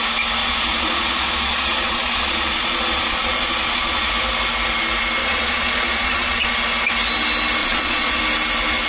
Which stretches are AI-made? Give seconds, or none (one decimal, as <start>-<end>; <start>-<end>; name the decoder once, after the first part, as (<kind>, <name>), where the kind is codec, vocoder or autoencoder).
0.4-4.1 (vocoder, Vocos); 5.2-6.5; 7.6-8.2